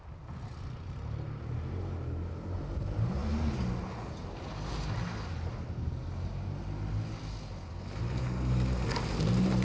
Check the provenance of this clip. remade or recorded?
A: recorded